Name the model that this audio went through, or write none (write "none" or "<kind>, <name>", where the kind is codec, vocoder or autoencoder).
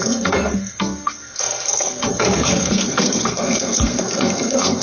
codec, SNAC